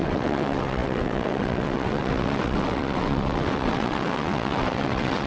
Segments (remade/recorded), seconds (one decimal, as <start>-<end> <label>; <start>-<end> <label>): 0.0-5.3 remade